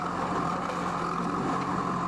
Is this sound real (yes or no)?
yes